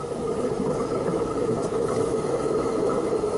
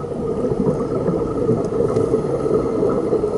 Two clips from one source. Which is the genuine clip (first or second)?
second